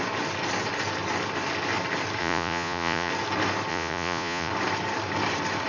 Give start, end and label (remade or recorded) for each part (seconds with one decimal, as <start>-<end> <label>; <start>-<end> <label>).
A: 0.0-2.2 recorded; 2.2-3.1 remade; 3.1-3.7 recorded; 3.7-4.5 remade; 4.5-5.7 recorded